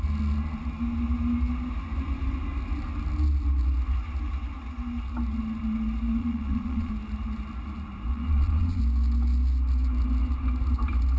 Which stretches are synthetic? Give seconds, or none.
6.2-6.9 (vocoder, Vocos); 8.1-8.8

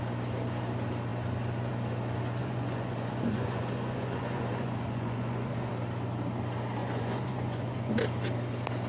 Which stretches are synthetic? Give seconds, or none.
2.4-5.7 (vocoder, Vocos); 6.8-7.9